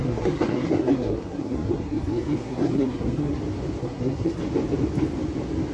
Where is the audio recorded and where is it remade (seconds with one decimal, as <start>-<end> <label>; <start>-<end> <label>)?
0.0-3.4 remade; 3.4-3.8 recorded; 3.8-4.4 remade; 4.4-5.7 recorded